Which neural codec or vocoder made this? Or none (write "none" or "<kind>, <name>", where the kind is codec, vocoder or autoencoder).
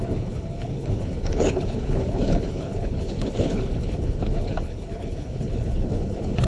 codec, HILCodec